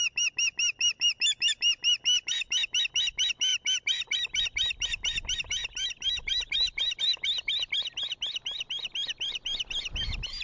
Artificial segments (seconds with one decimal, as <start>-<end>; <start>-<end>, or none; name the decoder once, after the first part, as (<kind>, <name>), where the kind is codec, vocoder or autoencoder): none